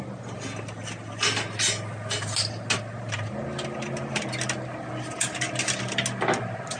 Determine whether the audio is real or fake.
real